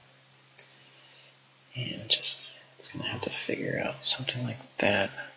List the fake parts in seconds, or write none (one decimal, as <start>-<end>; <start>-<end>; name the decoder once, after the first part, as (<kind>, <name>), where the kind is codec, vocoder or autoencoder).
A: 4.9-5.4 (codec, SNAC)